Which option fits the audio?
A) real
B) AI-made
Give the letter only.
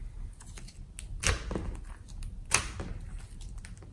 A